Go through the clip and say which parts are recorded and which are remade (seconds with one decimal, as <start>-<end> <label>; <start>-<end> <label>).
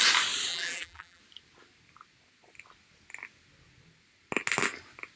0.0-0.5 recorded; 0.5-1.2 remade; 1.2-5.2 recorded